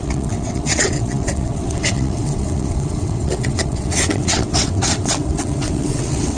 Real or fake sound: fake